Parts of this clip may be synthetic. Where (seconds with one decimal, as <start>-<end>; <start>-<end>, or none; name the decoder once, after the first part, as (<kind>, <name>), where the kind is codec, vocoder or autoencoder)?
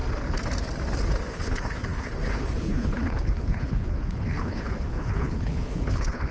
1.3-6.3 (codec, HILCodec)